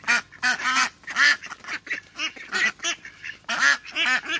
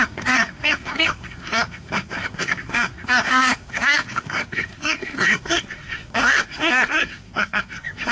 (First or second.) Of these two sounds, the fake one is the second